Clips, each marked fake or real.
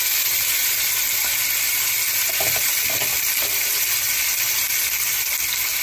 real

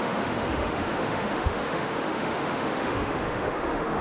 fake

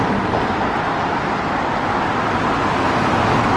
real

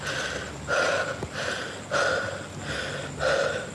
real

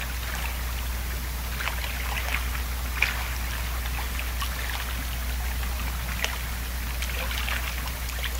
real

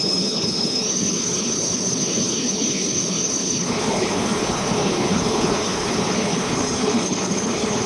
fake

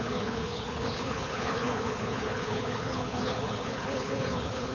fake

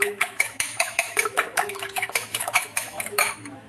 fake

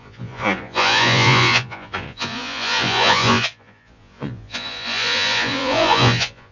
fake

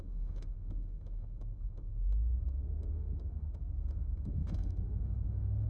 fake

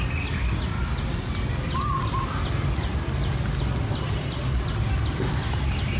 real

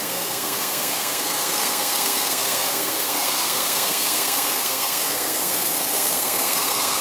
fake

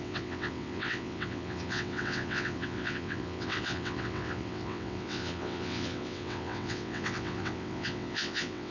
fake